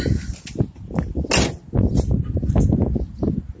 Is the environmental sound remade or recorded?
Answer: recorded